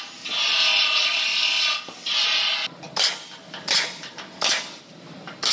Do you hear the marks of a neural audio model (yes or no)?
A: no